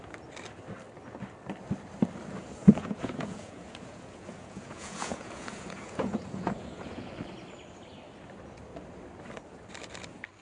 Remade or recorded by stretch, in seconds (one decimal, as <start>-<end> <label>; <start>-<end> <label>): 0.0-2.6 recorded; 2.6-7.1 remade; 7.1-10.4 recorded